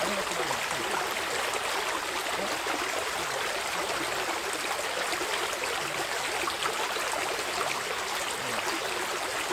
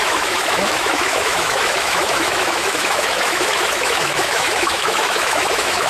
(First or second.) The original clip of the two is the first